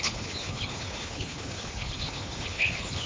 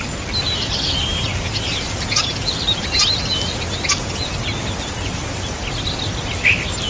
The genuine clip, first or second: second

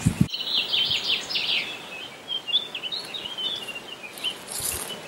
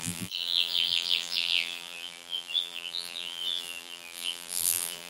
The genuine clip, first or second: first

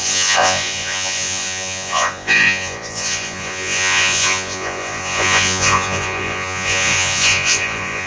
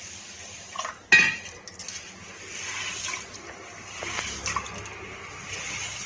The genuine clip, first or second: second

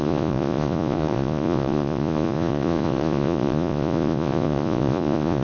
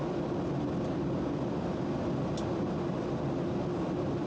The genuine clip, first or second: second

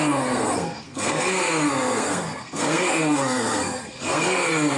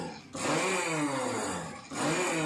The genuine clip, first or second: second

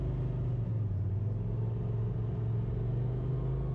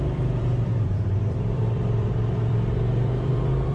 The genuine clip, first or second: first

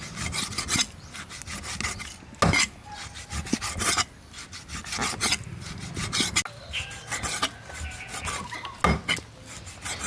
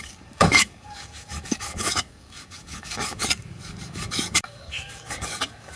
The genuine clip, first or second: first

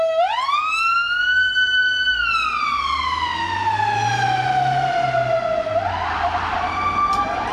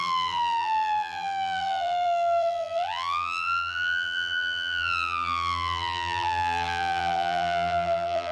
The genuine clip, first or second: first